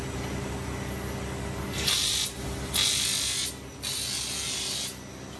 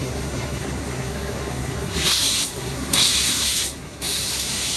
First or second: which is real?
first